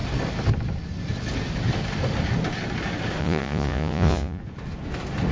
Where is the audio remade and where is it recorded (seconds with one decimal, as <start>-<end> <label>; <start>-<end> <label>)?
0.0-3.2 recorded; 3.2-4.4 remade; 4.4-5.3 recorded